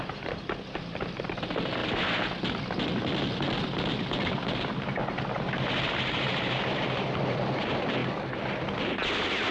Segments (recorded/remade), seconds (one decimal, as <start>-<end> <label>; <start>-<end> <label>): 0.0-1.8 remade; 1.8-5.4 recorded; 5.4-9.5 remade